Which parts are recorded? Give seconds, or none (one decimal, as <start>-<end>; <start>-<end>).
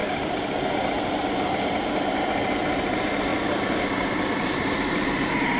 1.2-2.1